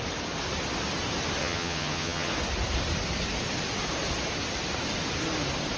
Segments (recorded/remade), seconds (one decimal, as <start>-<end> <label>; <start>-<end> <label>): 0.0-1.4 recorded; 1.4-2.3 remade; 2.3-5.8 recorded

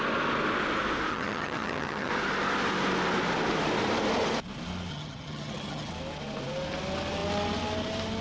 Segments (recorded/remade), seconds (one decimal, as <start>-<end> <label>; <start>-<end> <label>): 0.0-1.1 recorded; 1.1-2.1 remade; 2.1-4.9 recorded; 4.9-5.9 remade; 5.9-8.2 recorded

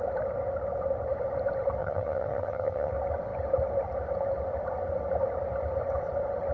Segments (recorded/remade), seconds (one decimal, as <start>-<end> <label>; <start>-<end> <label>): 0.0-1.8 recorded; 1.8-2.9 remade; 2.9-6.5 recorded